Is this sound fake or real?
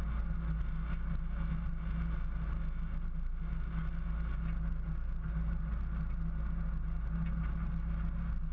real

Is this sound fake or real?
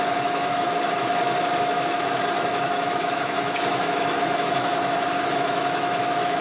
fake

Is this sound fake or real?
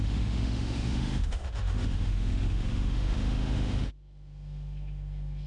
fake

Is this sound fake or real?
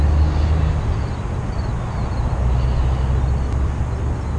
real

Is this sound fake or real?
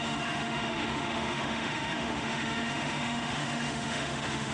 fake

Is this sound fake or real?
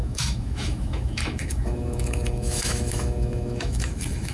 fake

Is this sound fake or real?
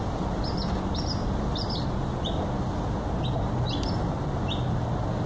real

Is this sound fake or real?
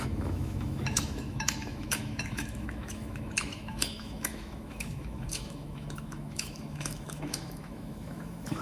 fake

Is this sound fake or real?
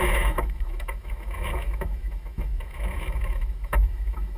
fake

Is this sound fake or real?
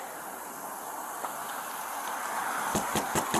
real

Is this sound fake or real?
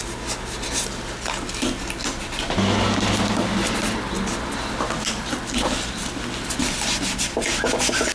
real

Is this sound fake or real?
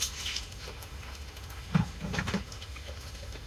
fake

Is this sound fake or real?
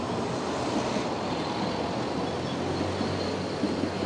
real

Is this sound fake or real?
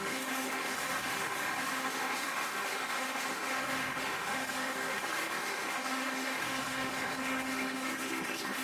fake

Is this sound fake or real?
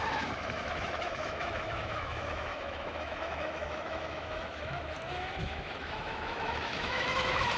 fake